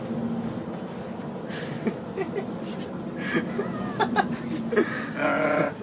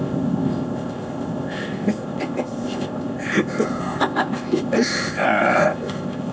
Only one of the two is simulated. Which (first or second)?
second